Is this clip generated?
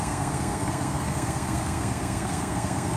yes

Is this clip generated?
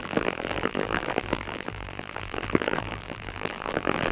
yes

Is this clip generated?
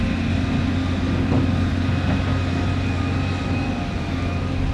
no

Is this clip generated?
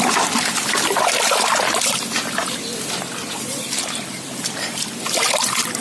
yes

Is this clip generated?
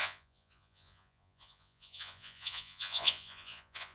yes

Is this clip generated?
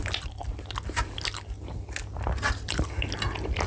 no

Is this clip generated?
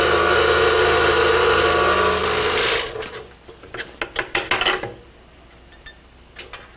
no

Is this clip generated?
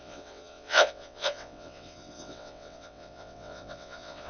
yes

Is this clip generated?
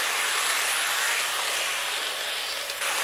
no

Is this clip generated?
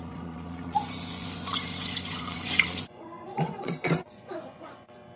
yes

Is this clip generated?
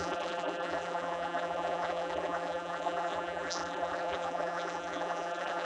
yes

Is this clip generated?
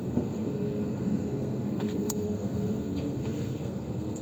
yes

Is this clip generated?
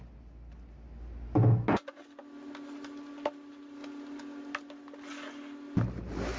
no